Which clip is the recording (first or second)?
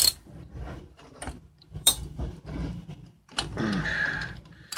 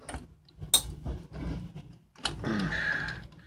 second